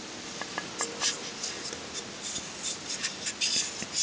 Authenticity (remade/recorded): recorded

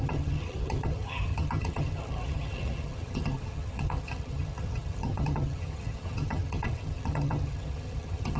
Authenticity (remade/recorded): remade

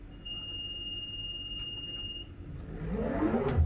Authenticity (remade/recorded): recorded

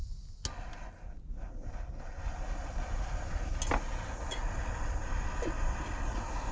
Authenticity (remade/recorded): recorded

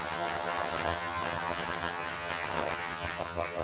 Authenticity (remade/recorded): remade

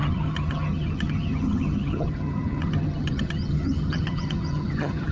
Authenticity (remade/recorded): remade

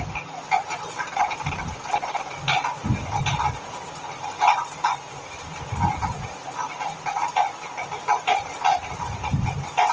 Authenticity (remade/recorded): recorded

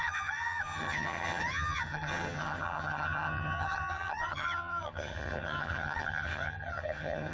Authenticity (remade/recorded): remade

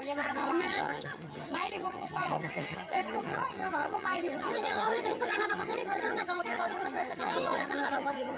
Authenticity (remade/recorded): remade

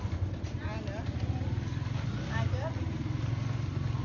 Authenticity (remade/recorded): recorded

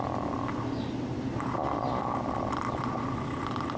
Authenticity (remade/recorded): recorded